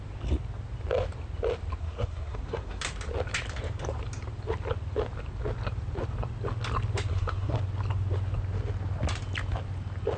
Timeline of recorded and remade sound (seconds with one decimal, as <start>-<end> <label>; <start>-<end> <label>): 0.0-1.8 recorded; 1.8-2.8 remade; 2.8-7.1 recorded; 7.1-7.6 remade; 7.6-10.2 recorded